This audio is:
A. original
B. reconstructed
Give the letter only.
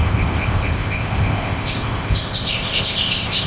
B